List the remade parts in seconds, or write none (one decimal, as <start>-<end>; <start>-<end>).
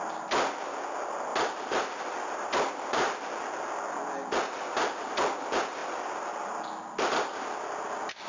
1.3-3.9